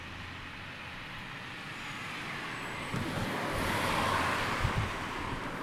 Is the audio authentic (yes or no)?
yes